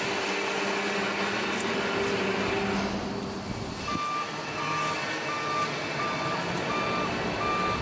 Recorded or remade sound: recorded